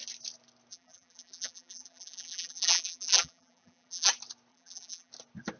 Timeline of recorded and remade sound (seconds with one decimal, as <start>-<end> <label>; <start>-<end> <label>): 0.0-0.7 recorded; 0.7-4.1 remade; 4.1-4.5 recorded; 4.5-5.1 remade; 5.1-5.6 recorded